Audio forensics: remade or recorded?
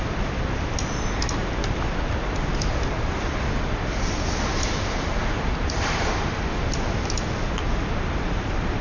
recorded